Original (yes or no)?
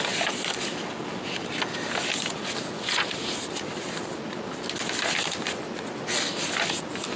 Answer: yes